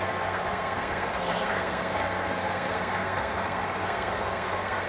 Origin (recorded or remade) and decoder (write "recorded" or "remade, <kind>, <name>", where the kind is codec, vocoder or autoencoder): remade, codec, SNAC